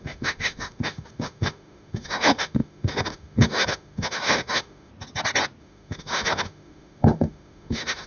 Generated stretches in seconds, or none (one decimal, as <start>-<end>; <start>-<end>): 0.0-4.9; 5.6-8.1